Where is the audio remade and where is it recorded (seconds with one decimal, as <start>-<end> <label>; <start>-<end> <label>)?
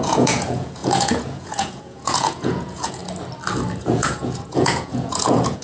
0.0-3.0 remade; 3.0-3.8 recorded; 3.8-5.6 remade